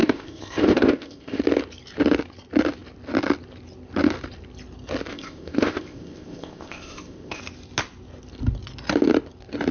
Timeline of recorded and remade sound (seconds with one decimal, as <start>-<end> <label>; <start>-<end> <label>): 0.0-1.4 remade; 1.4-5.1 recorded; 5.1-7.4 remade; 7.4-9.7 recorded